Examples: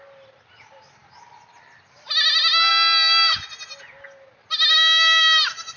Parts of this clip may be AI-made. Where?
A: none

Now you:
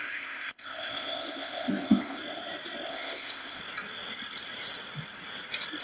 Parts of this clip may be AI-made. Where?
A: 0.0-2.2 (codec, ZipCodec); 2.9-3.6